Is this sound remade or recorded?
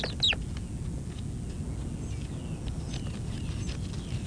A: recorded